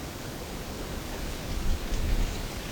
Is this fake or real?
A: fake